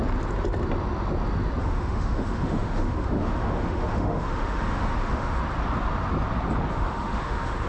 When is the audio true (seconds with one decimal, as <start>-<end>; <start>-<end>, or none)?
0.0-1.6; 5.4-6.7